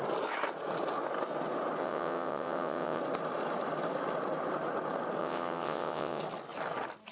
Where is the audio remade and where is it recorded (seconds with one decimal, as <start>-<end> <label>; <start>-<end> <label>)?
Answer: 0.0-1.8 recorded; 1.8-3.0 remade; 3.0-5.2 recorded; 5.2-6.2 remade; 6.2-7.1 recorded